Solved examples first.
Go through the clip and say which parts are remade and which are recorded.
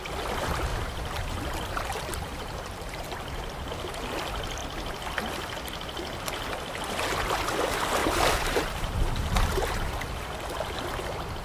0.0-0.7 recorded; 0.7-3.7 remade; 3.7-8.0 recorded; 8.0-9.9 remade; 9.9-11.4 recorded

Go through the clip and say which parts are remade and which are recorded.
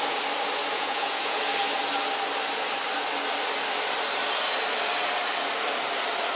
0.0-0.7 recorded; 0.7-1.4 remade; 1.4-6.4 recorded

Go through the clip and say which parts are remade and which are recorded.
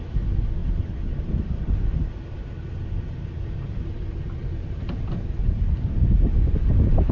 0.0-7.1 recorded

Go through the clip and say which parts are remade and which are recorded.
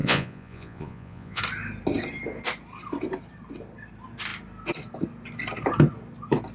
0.0-1.4 remade; 1.4-6.5 recorded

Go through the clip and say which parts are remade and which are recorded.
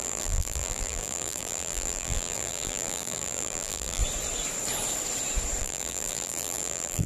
0.0-4.0 remade; 4.0-5.6 recorded; 5.6-7.1 remade